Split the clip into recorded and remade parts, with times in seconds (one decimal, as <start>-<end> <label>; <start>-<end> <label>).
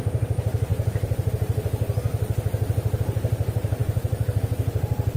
0.0-2.1 remade; 2.1-3.0 recorded; 3.0-5.2 remade